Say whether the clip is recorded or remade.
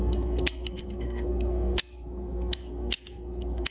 remade